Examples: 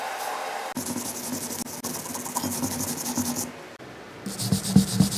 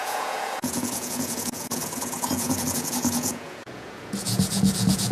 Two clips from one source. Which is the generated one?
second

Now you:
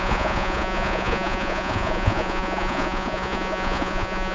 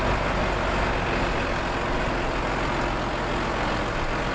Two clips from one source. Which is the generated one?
first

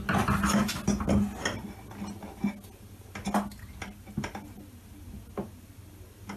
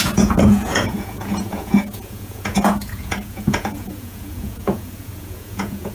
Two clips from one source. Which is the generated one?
second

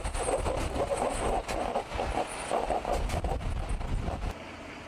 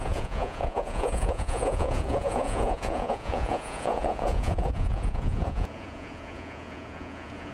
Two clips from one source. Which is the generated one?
second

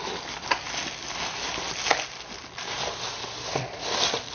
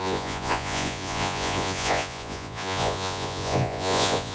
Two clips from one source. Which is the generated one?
second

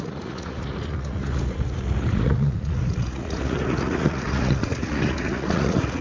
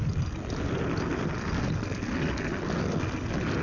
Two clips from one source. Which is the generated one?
first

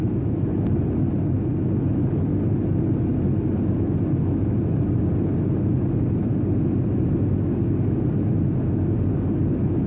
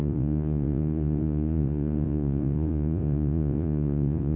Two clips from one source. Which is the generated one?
second